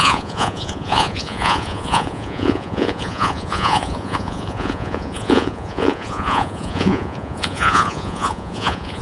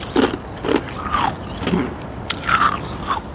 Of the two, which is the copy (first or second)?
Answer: first